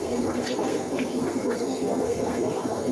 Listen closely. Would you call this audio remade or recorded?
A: remade